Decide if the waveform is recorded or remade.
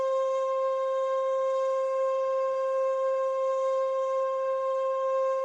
remade